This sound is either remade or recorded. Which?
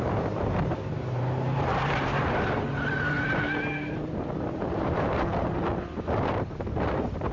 remade